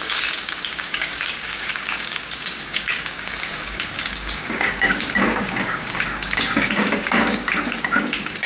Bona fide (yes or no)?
no